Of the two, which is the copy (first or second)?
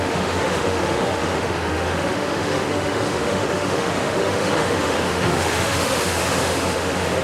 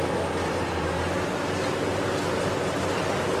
first